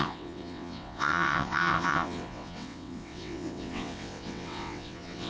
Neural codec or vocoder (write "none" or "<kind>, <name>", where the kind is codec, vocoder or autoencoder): vocoder, WaveNeXt